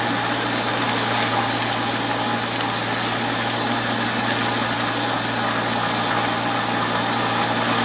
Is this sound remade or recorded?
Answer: recorded